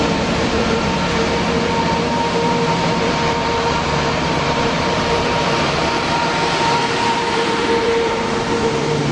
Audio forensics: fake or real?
fake